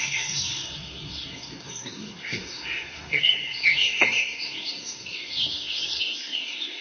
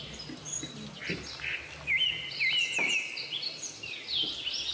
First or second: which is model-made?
first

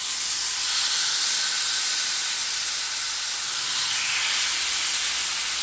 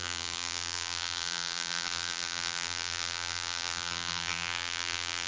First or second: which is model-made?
second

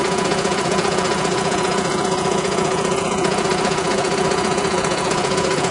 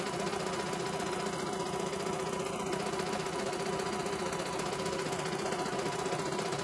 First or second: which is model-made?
first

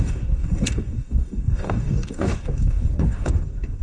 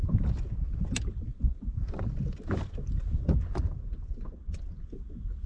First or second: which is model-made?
first